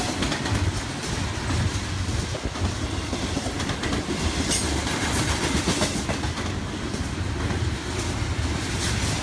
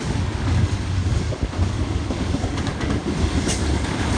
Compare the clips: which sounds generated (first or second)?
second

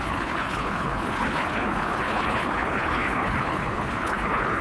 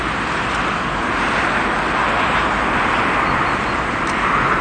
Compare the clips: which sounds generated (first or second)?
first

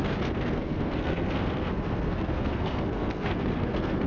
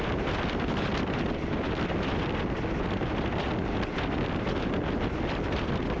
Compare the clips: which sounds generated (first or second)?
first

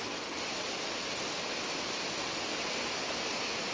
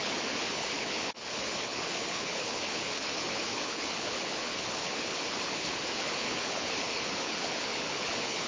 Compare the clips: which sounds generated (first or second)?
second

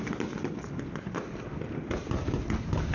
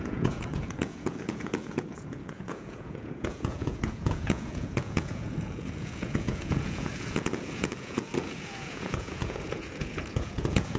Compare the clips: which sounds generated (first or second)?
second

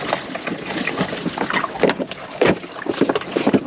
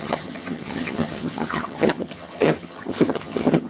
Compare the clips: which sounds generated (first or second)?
second